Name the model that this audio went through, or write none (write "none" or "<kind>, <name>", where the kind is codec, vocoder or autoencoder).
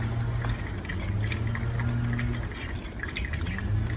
none